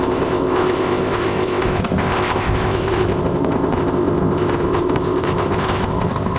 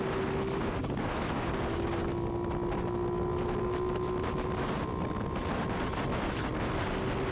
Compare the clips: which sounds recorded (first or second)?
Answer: second